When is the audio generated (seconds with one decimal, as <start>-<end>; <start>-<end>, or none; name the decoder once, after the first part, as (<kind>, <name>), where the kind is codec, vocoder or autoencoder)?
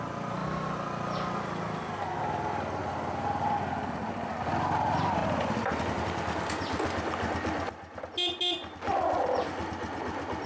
5.2-8.0 (vocoder, BigVGAN v2)